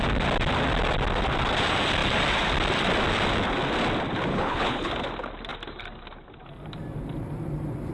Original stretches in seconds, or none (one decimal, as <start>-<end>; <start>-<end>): 0.0-4.3; 4.9-7.9